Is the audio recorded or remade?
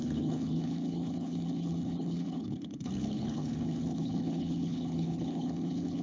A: remade